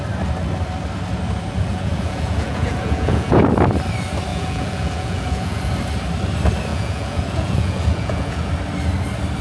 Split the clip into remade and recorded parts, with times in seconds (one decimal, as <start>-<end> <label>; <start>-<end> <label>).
0.0-1.7 recorded; 1.7-3.4 remade; 3.4-4.3 recorded; 4.3-5.7 remade; 5.7-6.7 recorded; 6.7-8.5 remade; 8.5-9.4 recorded